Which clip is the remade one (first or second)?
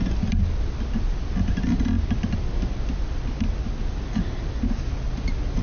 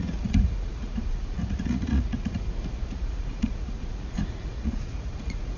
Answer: second